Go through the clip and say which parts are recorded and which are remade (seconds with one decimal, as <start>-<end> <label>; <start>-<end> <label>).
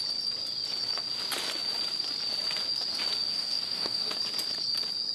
0.0-3.3 recorded; 3.3-4.1 remade; 4.1-5.1 recorded